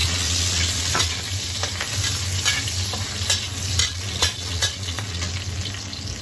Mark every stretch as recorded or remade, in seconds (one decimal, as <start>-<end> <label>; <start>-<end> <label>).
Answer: 0.0-1.2 remade; 1.2-3.8 recorded; 3.8-5.3 remade; 5.3-6.2 recorded